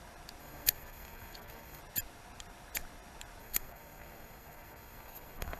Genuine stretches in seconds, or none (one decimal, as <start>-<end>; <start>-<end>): 0.0-0.4; 1.8-3.4